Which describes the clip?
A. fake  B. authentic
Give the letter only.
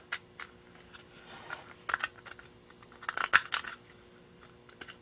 B